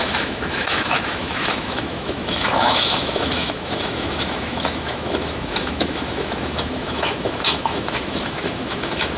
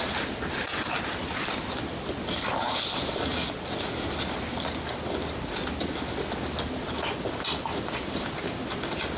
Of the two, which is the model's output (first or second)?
first